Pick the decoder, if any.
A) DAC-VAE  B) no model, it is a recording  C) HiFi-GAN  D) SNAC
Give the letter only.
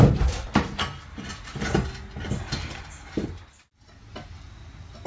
B